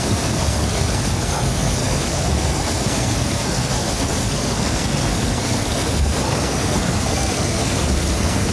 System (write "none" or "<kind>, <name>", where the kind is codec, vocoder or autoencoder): codec, SNAC